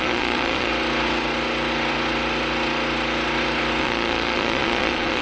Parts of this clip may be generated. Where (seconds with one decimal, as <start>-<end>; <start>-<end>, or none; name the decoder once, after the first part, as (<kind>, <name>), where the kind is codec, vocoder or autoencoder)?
0.0-0.7 (vocoder, Vocos); 3.8-5.2